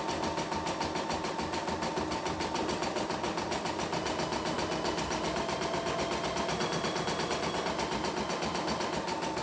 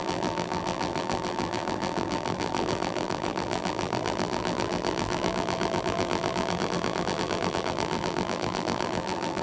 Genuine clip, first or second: first